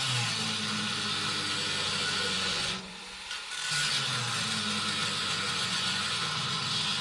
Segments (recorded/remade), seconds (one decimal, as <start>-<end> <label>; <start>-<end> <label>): 0.0-2.2 recorded; 2.2-3.0 remade; 3.0-5.2 recorded; 5.2-6.6 remade; 6.6-7.0 recorded